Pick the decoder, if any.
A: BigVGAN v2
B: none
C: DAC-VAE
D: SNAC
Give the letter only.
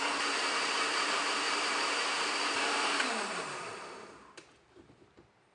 A